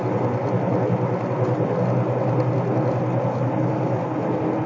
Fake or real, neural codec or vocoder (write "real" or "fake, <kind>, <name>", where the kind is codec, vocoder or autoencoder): real